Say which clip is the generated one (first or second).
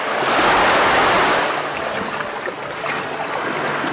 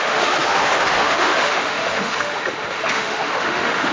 second